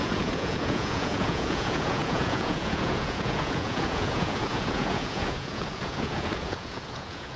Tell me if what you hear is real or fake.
fake